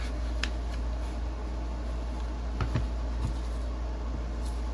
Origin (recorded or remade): recorded